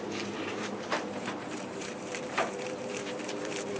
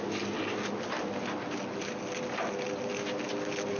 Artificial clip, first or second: first